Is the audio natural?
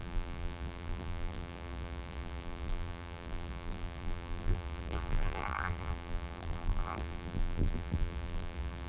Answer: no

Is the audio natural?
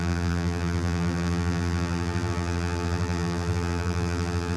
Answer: no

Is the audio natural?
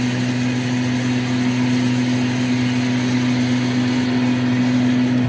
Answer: yes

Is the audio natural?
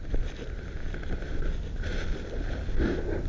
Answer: yes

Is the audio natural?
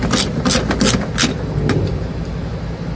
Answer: yes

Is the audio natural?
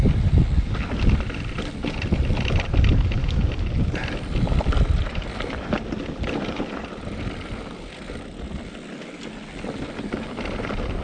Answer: yes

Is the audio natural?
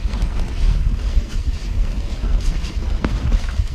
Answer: no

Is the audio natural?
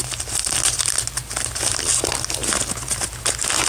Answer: yes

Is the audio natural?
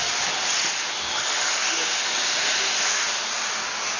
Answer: yes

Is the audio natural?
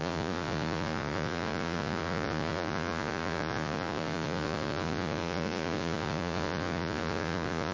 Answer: no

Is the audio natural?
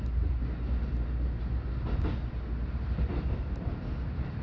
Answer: yes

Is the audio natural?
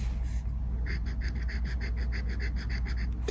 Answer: yes